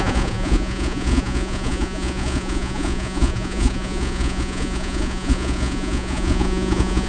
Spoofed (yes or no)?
yes